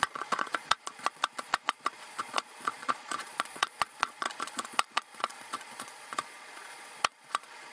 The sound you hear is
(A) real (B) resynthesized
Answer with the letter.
B